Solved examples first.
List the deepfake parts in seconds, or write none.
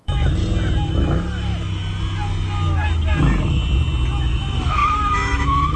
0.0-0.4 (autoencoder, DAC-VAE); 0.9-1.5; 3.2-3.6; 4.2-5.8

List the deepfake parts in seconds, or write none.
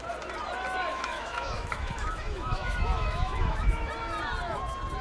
0.9-3.9 (autoencoder, DAC-VAE)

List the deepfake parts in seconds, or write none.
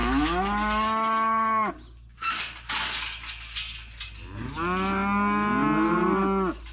0.0-1.7 (autoencoder, DAC-VAE)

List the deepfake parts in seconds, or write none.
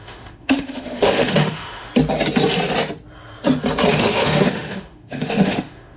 0.0-1.9 (autoencoder, DAC-VAE); 3.9-6.0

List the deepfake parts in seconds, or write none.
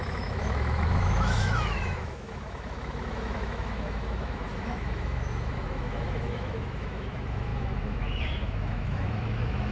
0.0-9.7 (autoencoder, DAC-VAE)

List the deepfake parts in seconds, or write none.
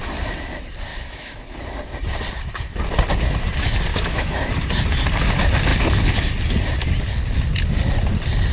0.9-1.6 (autoencoder, DAC-VAE); 3.9-4.5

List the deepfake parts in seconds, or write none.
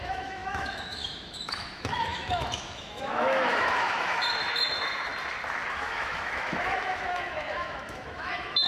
0.0-5.1 (autoencoder, DAC-VAE); 5.7-8.7